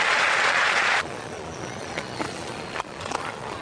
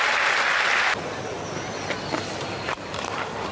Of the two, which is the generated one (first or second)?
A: first